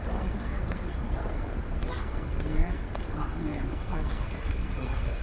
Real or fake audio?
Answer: fake